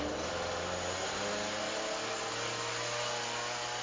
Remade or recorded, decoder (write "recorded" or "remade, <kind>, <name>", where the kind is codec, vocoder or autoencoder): recorded